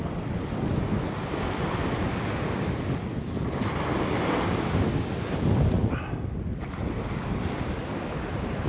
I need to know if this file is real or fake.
real